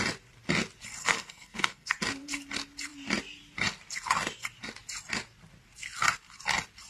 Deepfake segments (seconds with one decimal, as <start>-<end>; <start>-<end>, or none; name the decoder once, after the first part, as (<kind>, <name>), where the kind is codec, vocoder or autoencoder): 1.0-2.0 (codec, SNAC)